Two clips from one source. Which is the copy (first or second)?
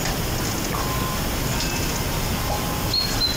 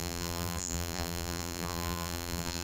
second